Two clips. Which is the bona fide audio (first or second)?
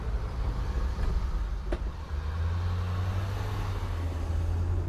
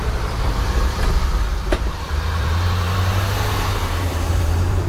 first